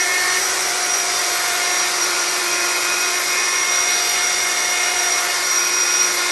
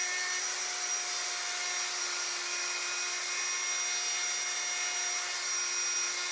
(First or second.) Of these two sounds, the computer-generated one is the first